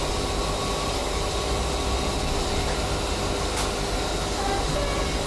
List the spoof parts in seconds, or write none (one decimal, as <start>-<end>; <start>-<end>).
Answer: none